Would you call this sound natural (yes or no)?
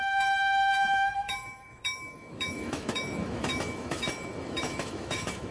no